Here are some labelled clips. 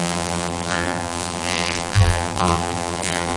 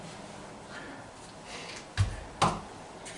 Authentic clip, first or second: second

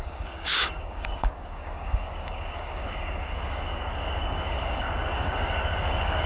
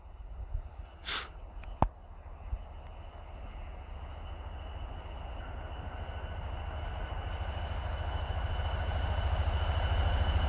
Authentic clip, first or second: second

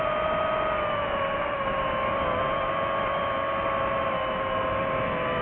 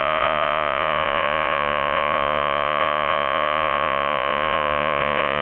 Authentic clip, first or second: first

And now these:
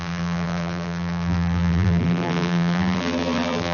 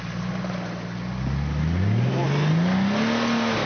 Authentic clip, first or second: second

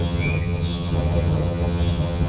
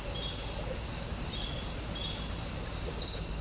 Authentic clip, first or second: second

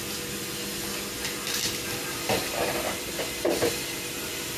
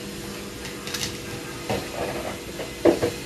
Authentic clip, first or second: second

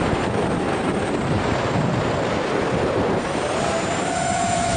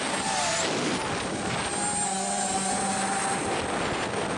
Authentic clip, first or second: second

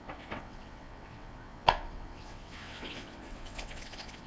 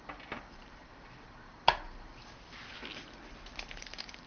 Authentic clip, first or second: second